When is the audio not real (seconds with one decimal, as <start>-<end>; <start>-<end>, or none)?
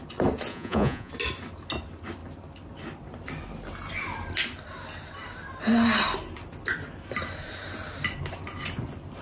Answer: 0.5-1.1